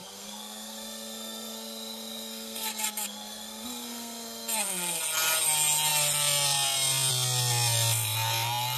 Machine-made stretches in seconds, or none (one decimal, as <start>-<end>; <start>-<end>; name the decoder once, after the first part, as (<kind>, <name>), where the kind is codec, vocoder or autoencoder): 0.0-5.0 (codec, SNAC)